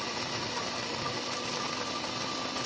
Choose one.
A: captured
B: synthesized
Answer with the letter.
A